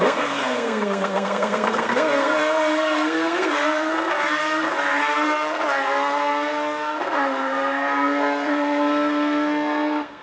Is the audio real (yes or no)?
no